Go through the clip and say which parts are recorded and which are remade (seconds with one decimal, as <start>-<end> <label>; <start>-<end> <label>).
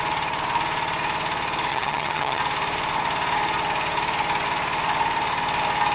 0.0-1.7 recorded; 1.7-2.4 remade; 2.4-5.9 recorded